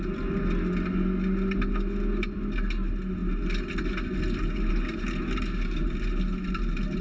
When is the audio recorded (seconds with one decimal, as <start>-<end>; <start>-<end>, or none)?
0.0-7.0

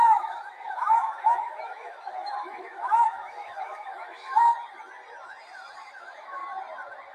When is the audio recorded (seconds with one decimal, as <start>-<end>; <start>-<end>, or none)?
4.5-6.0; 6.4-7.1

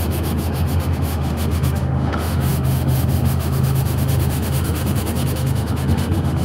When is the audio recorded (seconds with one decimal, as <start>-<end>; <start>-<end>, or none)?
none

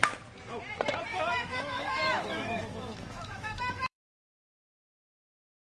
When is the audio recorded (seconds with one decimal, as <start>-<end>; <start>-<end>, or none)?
0.0-1.1; 4.5-5.7

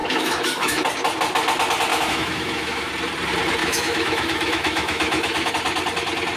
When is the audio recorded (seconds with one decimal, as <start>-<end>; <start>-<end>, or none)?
0.8-1.9; 2.9-3.6; 5.5-6.4